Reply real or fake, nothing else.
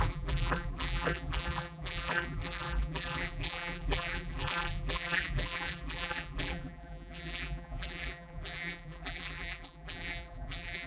fake